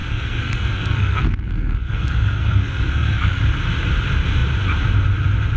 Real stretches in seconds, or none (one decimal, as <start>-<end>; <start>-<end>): 3.4-5.6